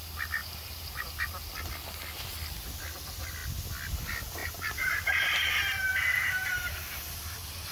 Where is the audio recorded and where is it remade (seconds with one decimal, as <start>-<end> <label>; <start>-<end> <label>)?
0.0-0.4 recorded; 0.4-1.5 remade; 1.5-4.4 recorded; 4.4-7.7 remade